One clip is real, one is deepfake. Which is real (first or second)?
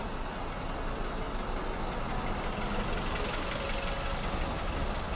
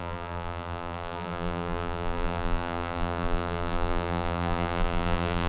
first